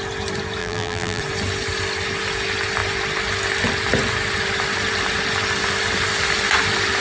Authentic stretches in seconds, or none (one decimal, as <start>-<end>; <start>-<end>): 0.0-0.6; 1.2-7.0